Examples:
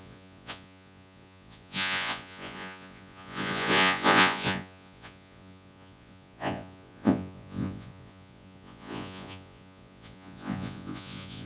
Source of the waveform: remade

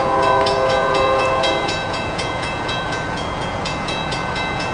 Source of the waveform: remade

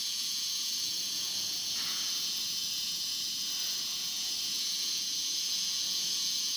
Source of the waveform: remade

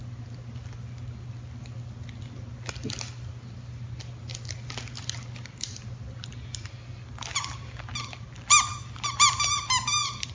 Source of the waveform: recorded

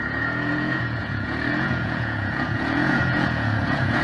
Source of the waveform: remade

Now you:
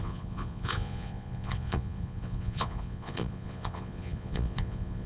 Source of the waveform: remade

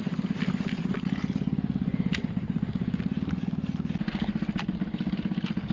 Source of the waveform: recorded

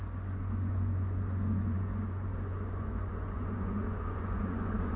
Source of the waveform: remade